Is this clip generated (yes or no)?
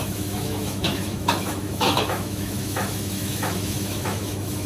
yes